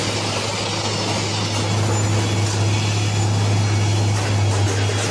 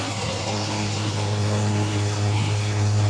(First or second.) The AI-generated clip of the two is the second